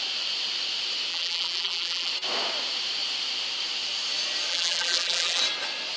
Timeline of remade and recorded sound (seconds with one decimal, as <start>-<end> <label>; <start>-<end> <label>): 0.0-1.1 recorded; 1.1-2.1 remade; 2.1-4.5 recorded; 4.5-5.4 remade; 5.4-6.0 recorded